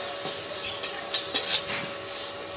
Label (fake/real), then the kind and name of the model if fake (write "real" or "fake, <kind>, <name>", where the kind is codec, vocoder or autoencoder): real